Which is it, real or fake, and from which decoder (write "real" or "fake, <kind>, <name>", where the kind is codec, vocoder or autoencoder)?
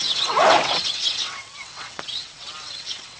fake, vocoder, WaveNeXt